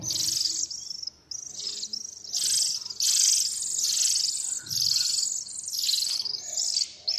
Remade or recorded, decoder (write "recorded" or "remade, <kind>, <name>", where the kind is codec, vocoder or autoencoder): recorded